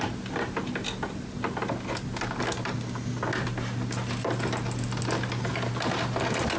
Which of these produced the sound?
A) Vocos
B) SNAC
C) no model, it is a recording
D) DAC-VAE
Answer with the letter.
C